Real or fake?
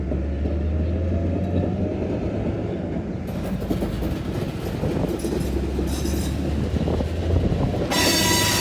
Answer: real